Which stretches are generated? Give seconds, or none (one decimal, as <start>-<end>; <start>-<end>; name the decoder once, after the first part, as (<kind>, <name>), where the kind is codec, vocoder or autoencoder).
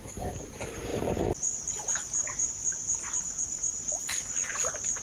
0.0-3.9 (vocoder, BigVGAN v2); 4.5-5.0